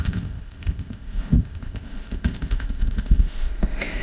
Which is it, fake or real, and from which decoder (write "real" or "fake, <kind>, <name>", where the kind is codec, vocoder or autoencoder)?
fake, codec, ZipCodec